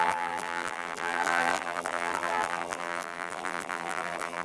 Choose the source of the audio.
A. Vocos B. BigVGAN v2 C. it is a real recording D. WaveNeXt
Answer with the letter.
B